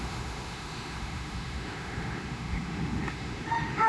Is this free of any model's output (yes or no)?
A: no